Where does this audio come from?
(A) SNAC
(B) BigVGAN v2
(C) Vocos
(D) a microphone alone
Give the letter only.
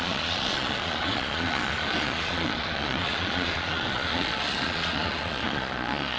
C